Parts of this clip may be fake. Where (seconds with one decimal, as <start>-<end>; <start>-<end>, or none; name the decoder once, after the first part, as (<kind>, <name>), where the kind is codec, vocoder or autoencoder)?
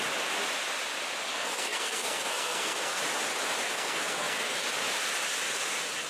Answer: 1.3-3.0 (codec, SNAC); 3.6-4.6